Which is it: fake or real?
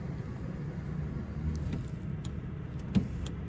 real